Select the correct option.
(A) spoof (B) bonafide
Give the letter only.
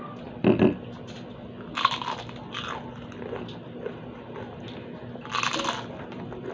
B